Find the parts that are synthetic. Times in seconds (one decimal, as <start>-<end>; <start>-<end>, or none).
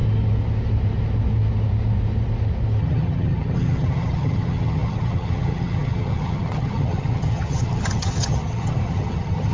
2.8-9.5